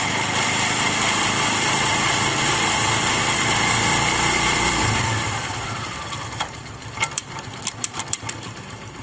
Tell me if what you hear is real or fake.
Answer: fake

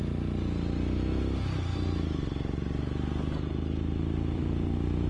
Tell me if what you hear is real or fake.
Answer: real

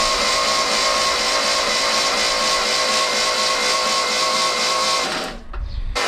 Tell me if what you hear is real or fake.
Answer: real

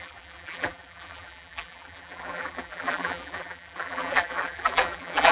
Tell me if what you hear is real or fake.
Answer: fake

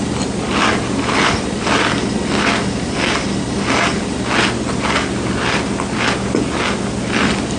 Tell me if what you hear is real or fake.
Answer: real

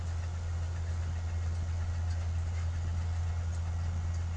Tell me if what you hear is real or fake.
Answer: real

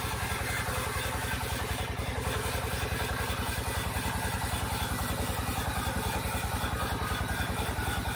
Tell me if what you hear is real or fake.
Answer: real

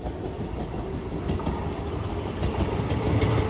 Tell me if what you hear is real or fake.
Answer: real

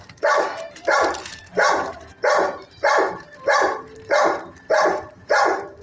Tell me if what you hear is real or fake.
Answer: fake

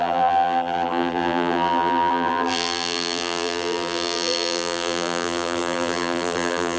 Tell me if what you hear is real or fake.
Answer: fake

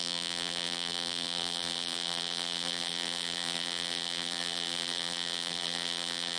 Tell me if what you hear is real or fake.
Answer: fake